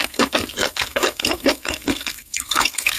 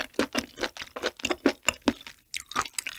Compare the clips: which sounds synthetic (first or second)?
first